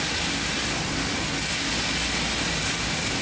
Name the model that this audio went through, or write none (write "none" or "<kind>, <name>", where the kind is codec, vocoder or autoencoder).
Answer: none